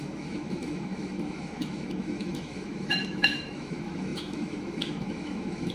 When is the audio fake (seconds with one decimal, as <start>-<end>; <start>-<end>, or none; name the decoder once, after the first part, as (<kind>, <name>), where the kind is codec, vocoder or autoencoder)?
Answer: 0.0-5.7 (autoencoder, DAC-VAE)